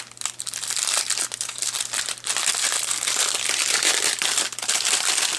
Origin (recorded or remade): remade